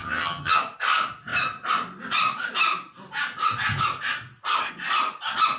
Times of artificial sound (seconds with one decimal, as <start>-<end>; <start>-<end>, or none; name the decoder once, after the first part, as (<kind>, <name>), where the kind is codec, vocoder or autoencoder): 0.0-0.6 (vocoder, HiFi-GAN)